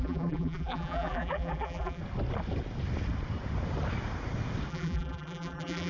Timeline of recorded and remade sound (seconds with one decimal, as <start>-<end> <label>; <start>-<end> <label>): 0.0-2.0 remade; 2.0-4.7 recorded; 4.7-5.9 remade